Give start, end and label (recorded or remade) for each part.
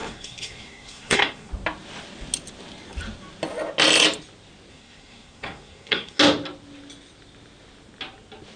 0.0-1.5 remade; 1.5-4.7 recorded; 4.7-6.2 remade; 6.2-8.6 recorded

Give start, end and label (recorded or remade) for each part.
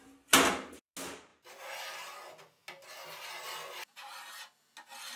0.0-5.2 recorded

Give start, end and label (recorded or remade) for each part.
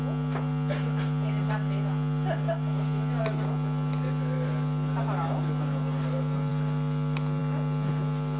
0.0-8.4 recorded